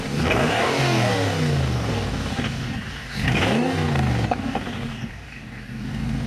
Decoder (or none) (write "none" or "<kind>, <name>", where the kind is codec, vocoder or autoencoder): codec, DAC